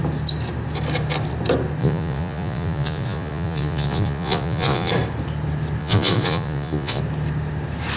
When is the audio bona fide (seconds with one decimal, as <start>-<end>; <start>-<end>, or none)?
0.0-1.8; 4.9-5.8; 7.0-8.0